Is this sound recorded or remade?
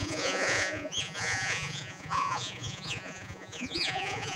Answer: remade